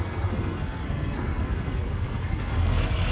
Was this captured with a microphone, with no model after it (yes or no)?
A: no